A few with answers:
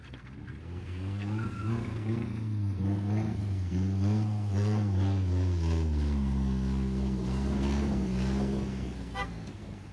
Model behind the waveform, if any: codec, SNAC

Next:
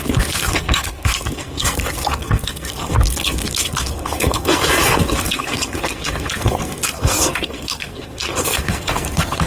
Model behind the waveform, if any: codec, SNAC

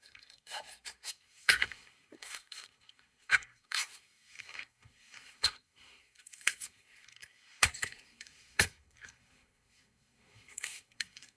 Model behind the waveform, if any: codec, SNAC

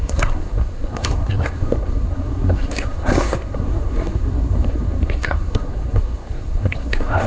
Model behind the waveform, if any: codec, SNAC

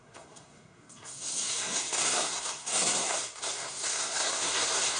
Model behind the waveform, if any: codec, SNAC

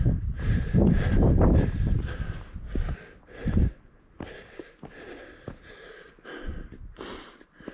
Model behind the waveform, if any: none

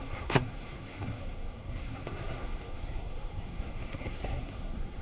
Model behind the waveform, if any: codec, SNAC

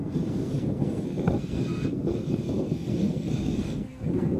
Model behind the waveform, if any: codec, SNAC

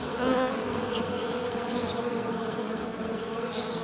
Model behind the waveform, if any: codec, SNAC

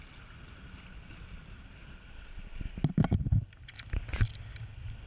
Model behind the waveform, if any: none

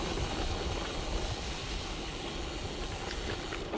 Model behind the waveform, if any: none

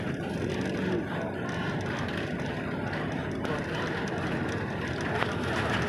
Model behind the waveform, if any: none